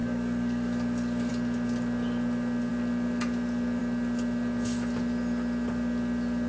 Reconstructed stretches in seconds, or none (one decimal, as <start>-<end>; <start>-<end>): 0.0-1.3